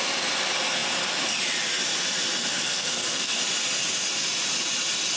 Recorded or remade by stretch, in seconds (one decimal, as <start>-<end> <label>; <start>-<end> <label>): 0.0-2.5 recorded; 2.5-3.4 remade; 3.4-5.2 recorded